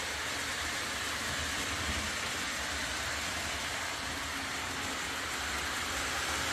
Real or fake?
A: real